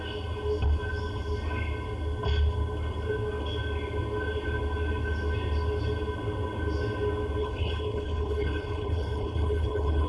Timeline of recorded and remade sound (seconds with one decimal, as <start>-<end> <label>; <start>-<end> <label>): 0.0-7.4 recorded; 7.4-10.1 remade